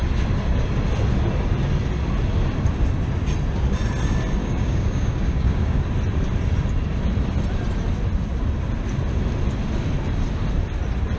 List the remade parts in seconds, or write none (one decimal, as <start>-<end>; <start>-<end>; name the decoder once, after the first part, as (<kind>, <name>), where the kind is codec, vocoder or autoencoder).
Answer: 4.4-5.8 (codec, DAC)